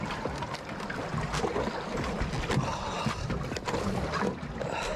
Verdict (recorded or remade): recorded